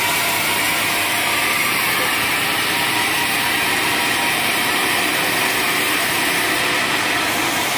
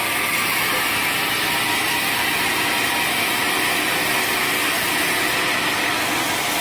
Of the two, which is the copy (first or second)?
first